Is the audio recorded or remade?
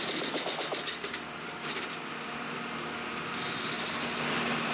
recorded